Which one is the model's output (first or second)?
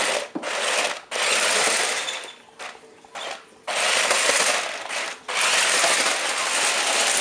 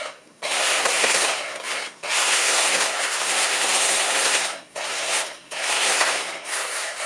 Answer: second